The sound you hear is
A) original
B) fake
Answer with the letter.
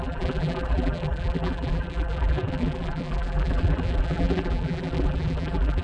B